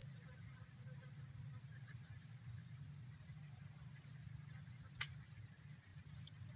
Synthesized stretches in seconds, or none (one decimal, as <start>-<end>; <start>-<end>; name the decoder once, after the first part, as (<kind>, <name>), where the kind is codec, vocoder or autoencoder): 5.9-6.6 (vocoder, BigVGAN v2)